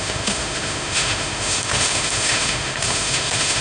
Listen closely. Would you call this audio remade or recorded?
remade